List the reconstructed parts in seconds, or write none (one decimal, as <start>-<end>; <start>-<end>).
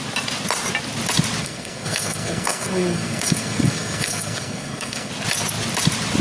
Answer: 1.4-5.1